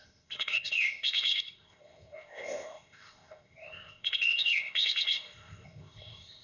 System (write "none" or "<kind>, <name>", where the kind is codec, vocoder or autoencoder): codec, ZipCodec